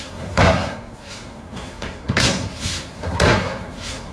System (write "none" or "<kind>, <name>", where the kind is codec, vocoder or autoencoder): codec, SNAC